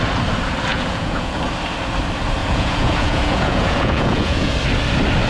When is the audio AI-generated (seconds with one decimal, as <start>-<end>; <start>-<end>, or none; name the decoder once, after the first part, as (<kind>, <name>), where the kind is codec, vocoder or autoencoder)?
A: 0.7-1.4 (vocoder, Vocos); 2.4-4.5

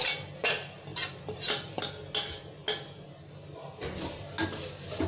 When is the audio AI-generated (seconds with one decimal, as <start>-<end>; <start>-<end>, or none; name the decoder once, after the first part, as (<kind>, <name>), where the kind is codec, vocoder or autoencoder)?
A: 0.9-1.8 (vocoder, BigVGAN v2)

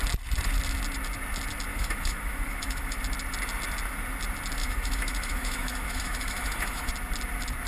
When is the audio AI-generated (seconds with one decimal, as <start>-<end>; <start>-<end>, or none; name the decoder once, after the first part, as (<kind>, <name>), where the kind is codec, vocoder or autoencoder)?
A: 1.7-3.0 (autoencoder, DAC-VAE); 4.6-6.9

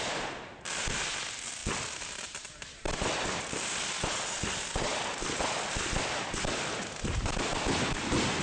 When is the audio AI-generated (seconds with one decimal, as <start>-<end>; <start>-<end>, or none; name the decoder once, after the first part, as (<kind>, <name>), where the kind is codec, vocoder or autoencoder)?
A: none

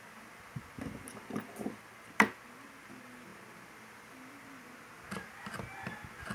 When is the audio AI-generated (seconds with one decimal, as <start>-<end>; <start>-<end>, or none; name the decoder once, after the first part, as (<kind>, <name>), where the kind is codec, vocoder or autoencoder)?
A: none

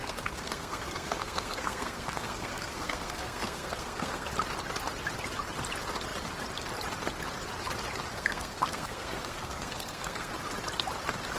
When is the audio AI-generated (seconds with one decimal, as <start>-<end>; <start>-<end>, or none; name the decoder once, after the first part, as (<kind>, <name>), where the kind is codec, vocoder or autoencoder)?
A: 0.0-4.3 (codec, SNAC); 8.1-10.3

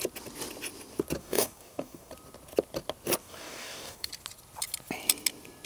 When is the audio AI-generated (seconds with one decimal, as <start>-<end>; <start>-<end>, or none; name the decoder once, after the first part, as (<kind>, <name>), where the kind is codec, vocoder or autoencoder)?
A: 1.2-2.1 (codec, DAC); 3.2-4.1

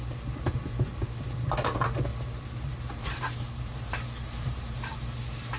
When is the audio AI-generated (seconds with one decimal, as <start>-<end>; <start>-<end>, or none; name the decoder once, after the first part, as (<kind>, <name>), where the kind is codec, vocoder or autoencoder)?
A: 2.1-4.8 (vocoder, BigVGAN v2)